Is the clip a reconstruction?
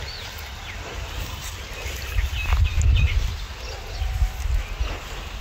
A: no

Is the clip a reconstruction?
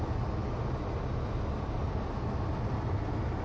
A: no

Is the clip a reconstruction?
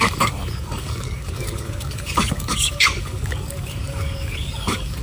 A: yes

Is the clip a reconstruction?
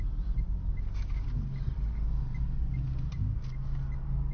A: no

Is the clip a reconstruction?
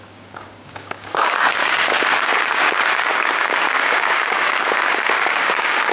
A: yes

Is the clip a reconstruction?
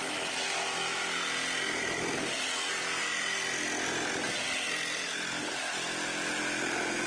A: no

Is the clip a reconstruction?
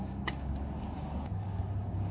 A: yes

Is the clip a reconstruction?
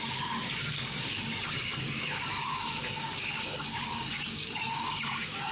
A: yes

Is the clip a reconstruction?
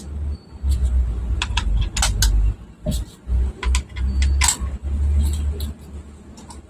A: no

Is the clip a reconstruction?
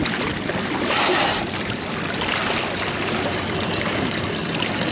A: no